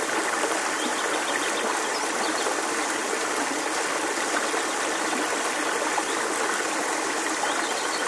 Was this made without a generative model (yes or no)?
yes